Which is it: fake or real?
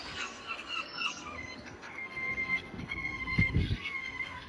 fake